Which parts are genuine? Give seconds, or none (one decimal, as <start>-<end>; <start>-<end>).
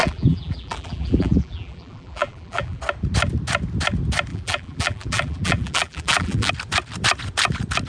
2.8-4.3; 6.5-7.9